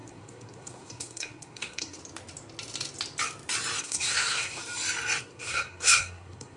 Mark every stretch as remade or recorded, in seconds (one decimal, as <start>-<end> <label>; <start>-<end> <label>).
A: 0.0-2.0 remade; 2.0-3.8 recorded; 3.8-4.6 remade; 4.6-5.2 recorded; 5.2-6.6 remade